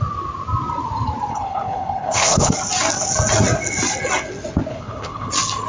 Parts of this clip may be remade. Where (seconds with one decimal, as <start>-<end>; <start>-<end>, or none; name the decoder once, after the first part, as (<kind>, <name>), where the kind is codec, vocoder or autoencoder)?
1.3-2.5 (codec, HILCodec); 4.7-5.3